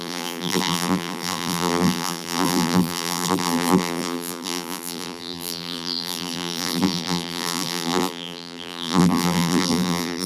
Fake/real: fake